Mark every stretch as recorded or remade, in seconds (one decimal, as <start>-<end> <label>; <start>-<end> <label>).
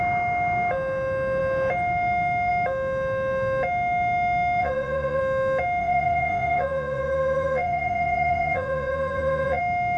0.0-4.6 recorded; 4.6-5.2 remade; 5.2-5.8 recorded; 5.8-9.6 remade; 9.6-10.0 recorded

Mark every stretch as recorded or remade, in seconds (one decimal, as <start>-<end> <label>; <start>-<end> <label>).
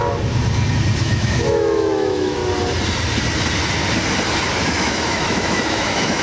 0.0-1.0 recorded; 1.0-2.4 remade; 2.4-4.7 recorded; 4.7-6.2 remade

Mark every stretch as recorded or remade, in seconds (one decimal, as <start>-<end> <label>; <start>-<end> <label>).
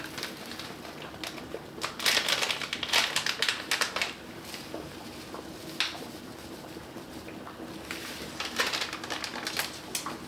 0.0-10.3 recorded